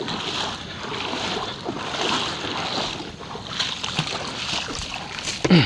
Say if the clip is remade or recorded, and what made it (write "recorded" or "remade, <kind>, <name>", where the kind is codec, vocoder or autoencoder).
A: recorded